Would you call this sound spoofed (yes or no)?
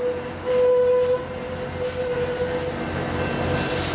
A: no